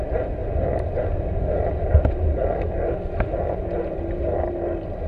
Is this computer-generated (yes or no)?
no